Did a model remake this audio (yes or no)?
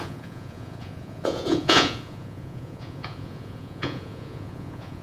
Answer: yes